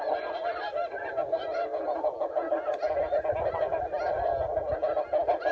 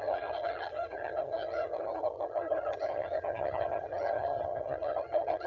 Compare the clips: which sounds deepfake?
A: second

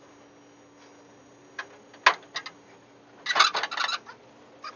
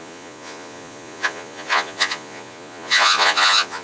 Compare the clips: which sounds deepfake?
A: second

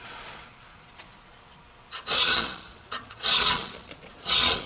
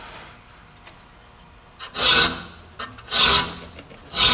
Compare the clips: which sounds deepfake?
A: first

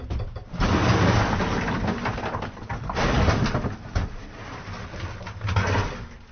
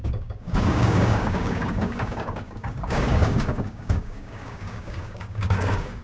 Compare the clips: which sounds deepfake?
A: second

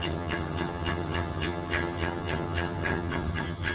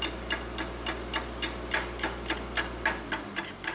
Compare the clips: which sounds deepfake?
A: first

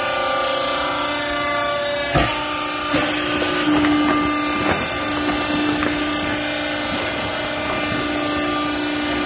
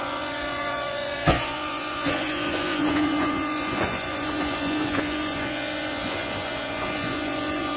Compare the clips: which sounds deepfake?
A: second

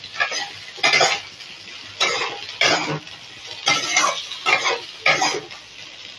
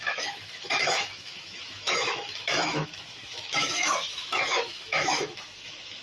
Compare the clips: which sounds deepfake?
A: second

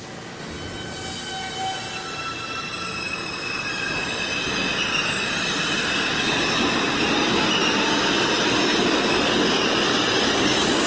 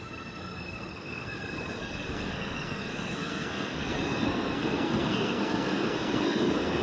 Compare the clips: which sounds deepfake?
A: second